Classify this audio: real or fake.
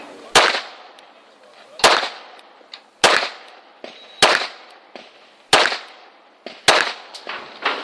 real